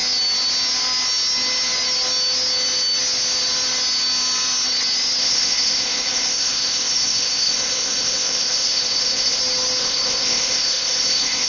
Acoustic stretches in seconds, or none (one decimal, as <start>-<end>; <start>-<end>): 0.0-5.2; 9.4-9.8

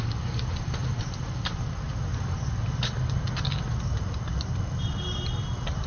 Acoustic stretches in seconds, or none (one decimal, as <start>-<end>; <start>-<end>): 0.0-5.9

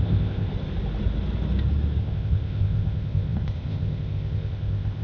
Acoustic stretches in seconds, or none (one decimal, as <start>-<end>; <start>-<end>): 0.5-2.0